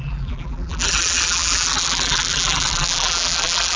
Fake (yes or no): yes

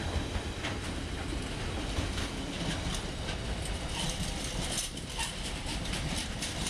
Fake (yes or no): yes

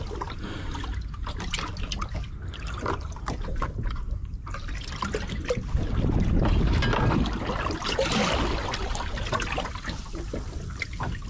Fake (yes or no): no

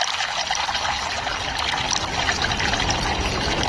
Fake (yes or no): yes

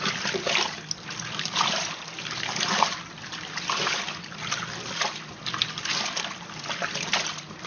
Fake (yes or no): no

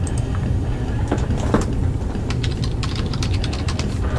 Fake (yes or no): yes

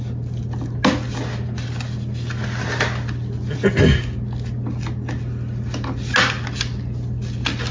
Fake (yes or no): no